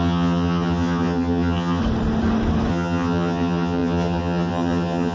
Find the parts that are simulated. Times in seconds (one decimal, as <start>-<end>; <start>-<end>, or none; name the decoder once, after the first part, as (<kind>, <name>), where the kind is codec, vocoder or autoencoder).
0.0-1.8 (vocoder, HiFi-GAN); 2.7-5.1